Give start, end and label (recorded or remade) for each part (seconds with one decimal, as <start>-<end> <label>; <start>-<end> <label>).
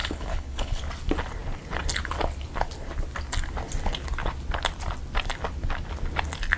0.0-0.8 remade; 0.8-6.6 recorded